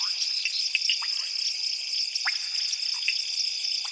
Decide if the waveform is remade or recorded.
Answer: recorded